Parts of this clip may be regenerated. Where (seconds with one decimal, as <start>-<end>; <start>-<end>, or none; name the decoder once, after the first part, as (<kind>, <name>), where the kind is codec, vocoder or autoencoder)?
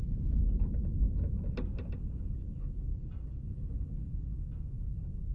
2.9-3.7 (vocoder, Vocos)